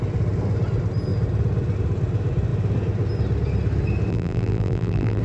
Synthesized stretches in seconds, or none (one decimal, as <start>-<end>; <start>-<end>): 4.1-5.2